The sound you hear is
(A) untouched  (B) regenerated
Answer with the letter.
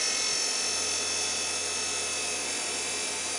A